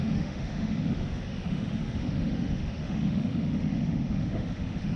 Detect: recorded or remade remade